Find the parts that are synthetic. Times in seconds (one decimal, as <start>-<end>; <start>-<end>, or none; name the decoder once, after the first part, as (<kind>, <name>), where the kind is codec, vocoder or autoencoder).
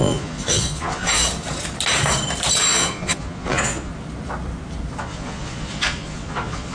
0.0-1.2 (vocoder, Vocos); 2.6-3.9; 5.0-6.7